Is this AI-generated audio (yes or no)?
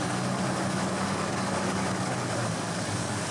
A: yes